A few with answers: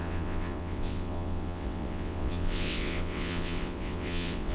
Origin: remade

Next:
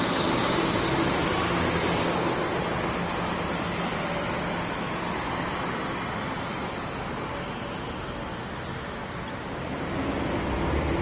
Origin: recorded